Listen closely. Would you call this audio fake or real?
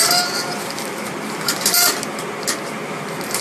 fake